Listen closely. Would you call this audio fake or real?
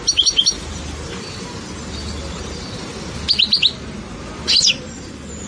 real